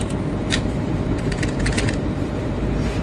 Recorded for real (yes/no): no